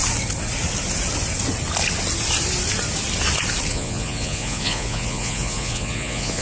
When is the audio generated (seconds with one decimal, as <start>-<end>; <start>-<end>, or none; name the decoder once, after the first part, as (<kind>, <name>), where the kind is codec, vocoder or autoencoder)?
3.7-6.4 (vocoder, Vocos)